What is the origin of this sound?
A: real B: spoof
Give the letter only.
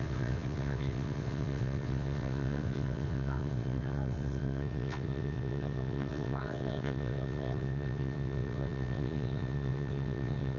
B